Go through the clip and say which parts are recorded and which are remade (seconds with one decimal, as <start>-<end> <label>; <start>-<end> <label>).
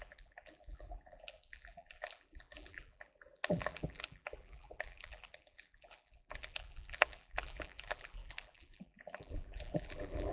0.0-10.3 remade